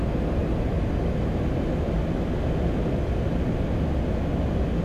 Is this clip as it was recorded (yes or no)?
yes